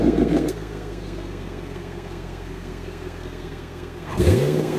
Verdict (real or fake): fake